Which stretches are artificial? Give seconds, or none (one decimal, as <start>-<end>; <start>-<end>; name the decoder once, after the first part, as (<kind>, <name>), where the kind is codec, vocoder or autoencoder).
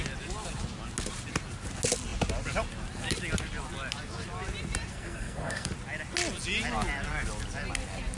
4.9-5.7 (codec, SNAC)